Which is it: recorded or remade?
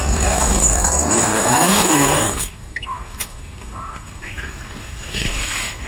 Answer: remade